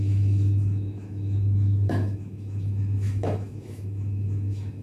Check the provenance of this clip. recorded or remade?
remade